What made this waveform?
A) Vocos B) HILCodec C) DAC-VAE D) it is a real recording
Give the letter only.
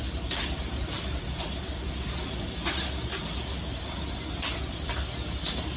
D